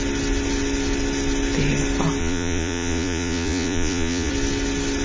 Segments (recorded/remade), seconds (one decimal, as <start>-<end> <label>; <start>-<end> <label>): 0.0-2.2 recorded; 2.2-4.3 remade; 4.3-5.0 recorded